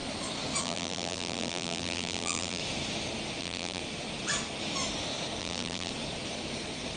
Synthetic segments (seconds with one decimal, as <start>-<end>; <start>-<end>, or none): 0.6-2.6; 3.4-3.8; 5.4-5.9